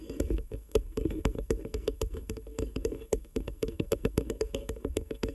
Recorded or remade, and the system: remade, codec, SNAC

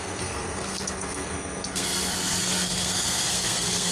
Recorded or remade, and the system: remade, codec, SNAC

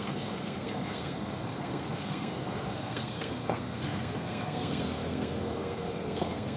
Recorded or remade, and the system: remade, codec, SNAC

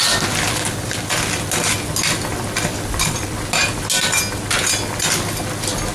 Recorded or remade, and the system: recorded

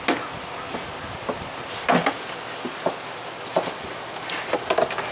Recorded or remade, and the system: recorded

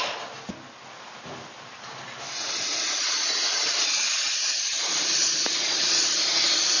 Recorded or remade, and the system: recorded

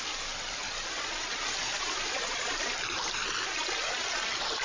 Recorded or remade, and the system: recorded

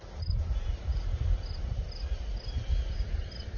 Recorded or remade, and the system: recorded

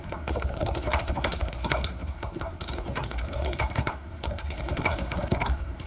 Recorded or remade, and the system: remade, codec, SNAC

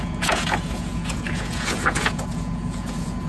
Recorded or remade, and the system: remade, vocoder, Vocos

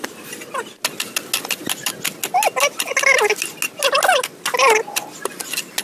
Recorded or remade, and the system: recorded